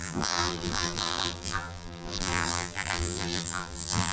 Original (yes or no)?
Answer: no